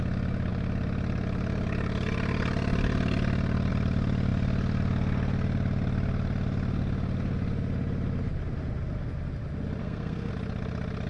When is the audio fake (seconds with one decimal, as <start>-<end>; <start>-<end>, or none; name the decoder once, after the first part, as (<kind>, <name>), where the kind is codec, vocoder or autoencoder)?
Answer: 9.8-10.3 (codec, SNAC)